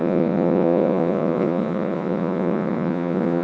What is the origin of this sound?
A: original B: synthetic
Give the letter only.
B